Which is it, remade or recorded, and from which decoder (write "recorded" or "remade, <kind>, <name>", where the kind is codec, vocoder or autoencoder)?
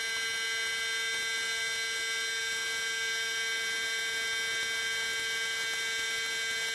recorded